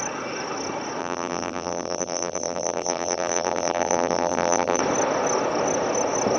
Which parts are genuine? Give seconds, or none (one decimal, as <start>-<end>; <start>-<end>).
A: 0.0-1.0; 4.8-6.4